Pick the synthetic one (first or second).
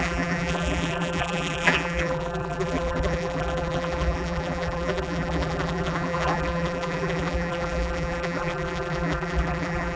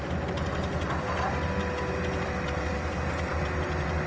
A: first